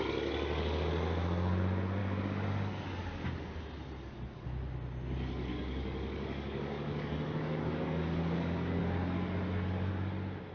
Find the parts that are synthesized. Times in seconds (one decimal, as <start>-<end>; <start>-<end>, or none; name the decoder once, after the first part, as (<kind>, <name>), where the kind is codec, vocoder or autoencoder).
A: 2.0-2.8 (codec, DAC); 5.5-8.8